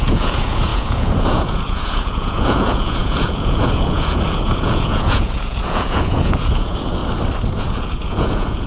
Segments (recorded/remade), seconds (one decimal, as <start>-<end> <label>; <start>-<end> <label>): 0.0-7.0 remade; 7.0-7.6 recorded; 7.6-8.7 remade